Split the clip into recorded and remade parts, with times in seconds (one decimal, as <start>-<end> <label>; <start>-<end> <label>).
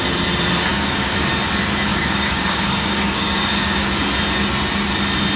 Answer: 0.0-0.7 recorded; 0.7-1.3 remade; 1.3-1.9 recorded; 1.9-3.9 remade; 3.9-5.4 recorded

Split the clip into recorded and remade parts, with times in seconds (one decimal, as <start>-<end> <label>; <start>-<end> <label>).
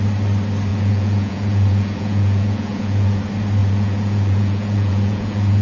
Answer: 0.0-0.7 recorded; 0.7-3.2 remade; 3.2-3.6 recorded; 3.6-5.6 remade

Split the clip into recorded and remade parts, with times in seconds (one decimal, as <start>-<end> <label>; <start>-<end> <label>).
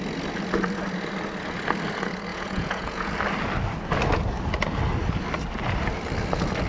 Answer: 0.0-2.3 recorded; 2.3-3.1 remade; 3.1-6.7 recorded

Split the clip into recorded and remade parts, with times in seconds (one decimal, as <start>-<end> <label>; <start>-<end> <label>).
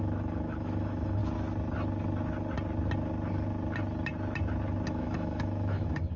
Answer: 0.0-1.2 remade; 1.2-4.9 recorded; 4.9-6.2 remade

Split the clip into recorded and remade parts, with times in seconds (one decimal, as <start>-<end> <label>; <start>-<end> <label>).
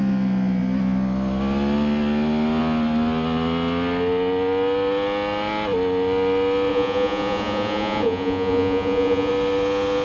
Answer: 0.0-6.7 recorded; 6.7-9.3 remade; 9.3-10.0 recorded